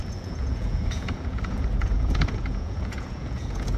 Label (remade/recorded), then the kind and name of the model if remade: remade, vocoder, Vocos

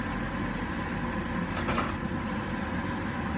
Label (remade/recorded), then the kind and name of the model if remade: recorded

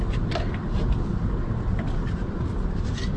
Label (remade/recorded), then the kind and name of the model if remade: recorded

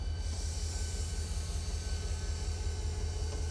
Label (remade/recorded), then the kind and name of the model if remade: recorded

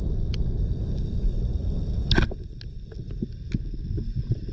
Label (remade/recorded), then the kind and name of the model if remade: recorded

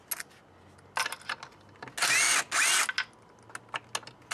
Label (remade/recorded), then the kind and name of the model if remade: recorded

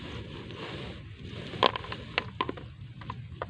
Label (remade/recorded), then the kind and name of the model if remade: recorded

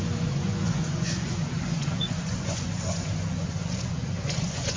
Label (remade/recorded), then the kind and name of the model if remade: remade, vocoder, Vocos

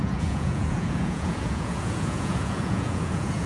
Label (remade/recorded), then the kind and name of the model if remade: remade, vocoder, Vocos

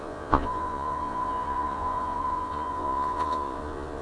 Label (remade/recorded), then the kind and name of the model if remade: remade, vocoder, Vocos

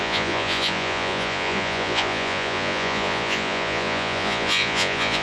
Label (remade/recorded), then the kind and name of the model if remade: remade, vocoder, Vocos